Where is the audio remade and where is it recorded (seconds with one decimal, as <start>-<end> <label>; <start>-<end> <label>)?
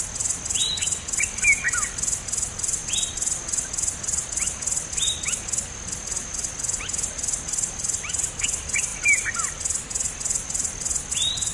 0.0-11.5 recorded